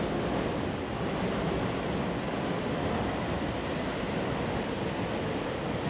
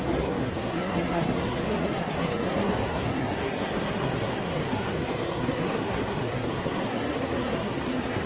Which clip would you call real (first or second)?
first